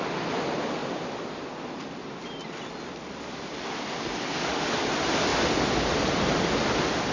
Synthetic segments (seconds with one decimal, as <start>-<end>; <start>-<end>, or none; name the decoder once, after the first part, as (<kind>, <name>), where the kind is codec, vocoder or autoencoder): none